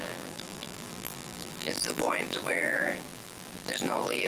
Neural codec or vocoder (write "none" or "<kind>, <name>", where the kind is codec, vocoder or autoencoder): vocoder, BigVGAN v2